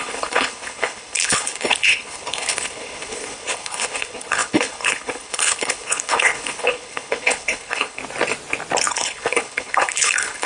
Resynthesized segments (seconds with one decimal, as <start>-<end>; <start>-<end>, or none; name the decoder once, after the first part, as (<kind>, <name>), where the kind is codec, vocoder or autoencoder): 0.0-8.0 (codec, HILCodec); 8.9-10.5